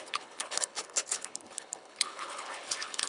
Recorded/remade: remade